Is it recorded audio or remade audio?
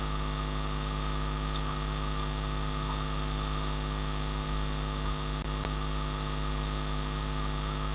recorded